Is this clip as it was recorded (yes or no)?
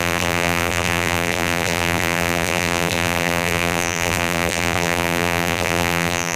no